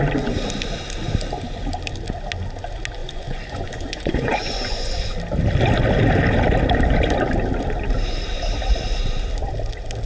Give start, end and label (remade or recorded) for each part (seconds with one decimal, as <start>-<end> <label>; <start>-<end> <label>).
0.0-3.0 recorded; 3.0-5.1 remade; 5.1-10.1 recorded